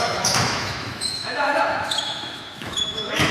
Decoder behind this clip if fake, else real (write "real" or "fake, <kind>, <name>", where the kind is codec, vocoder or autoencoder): fake, autoencoder, DAC-VAE